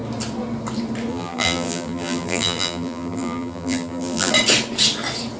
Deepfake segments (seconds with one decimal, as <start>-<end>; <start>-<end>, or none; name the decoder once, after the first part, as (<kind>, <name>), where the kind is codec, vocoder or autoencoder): 1.1-4.3 (vocoder, BigVGAN v2)